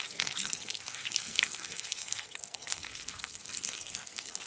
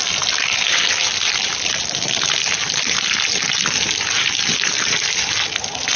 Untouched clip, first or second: second